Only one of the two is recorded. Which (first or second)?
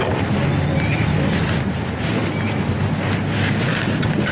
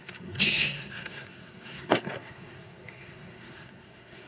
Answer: first